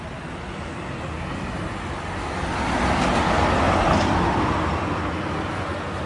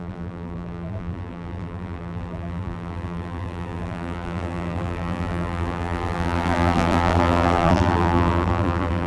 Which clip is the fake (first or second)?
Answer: second